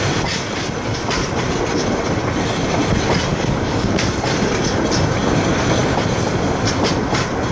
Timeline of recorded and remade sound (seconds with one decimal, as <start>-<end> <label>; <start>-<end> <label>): 0.0-3.3 recorded; 3.3-4.0 remade; 4.0-7.5 recorded